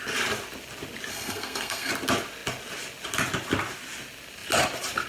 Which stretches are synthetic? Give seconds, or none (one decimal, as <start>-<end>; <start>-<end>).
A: 1.1-1.9